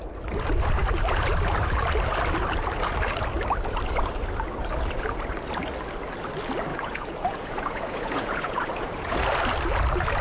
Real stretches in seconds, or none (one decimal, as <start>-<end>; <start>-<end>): 0.0-6.7; 9.2-10.2